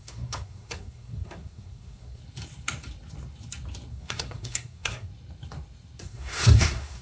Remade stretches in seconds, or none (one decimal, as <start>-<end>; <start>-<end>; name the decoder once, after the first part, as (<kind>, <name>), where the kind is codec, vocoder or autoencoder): 0.0-2.2 (codec, SNAC); 3.9-5.1; 6.0-7.0